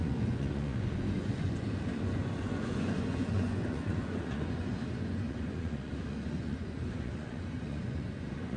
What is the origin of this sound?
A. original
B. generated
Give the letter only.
B